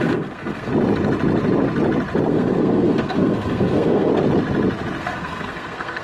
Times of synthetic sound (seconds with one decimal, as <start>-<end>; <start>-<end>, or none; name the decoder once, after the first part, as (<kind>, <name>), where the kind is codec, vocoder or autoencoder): 0.0-0.7 (codec, SNAC); 2.3-4.1; 5.0-6.0